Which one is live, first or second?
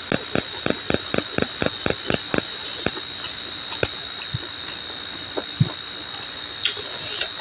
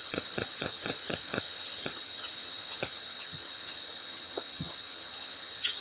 first